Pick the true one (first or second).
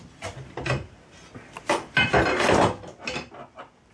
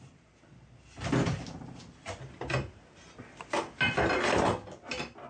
second